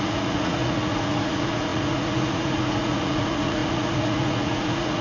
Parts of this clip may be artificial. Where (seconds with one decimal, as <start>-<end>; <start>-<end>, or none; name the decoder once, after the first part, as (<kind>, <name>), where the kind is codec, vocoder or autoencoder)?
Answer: 0.0-5.0 (vocoder, Vocos)